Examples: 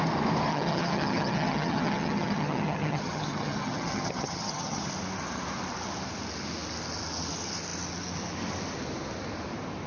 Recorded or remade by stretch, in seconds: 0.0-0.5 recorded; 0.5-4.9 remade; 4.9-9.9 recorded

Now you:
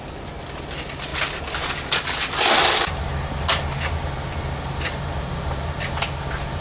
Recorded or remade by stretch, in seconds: 0.0-6.6 recorded

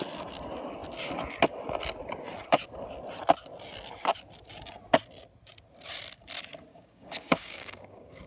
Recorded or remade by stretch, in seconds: 0.0-6.7 recorded; 6.7-8.3 remade

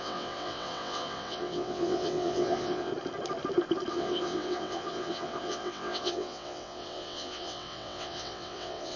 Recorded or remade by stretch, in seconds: 0.0-2.9 remade; 2.9-3.9 recorded; 3.9-9.0 remade

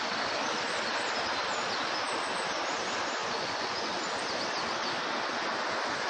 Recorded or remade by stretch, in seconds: 0.0-3.2 recorded; 3.2-3.9 remade; 3.9-6.1 recorded

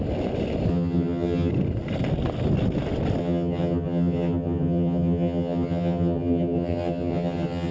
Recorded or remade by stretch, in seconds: 0.0-0.7 recorded; 0.7-1.5 remade; 1.5-3.2 recorded; 3.2-7.7 remade

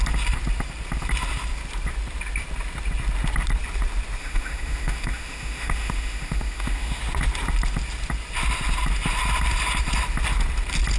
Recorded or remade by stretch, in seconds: 0.0-4.2 recorded; 4.2-7.0 remade; 7.0-11.0 recorded

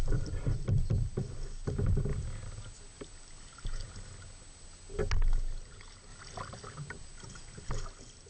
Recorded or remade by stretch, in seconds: 0.0-8.3 recorded